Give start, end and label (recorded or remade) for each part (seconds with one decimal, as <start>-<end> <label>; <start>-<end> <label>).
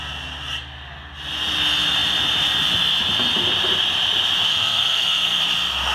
0.0-4.5 recorded; 4.5-5.4 remade; 5.4-5.9 recorded